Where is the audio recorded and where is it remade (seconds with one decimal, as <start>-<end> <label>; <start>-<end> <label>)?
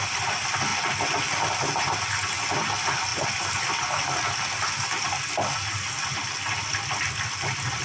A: 0.0-7.8 recorded